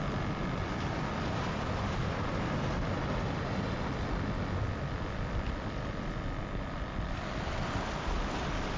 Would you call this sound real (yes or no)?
yes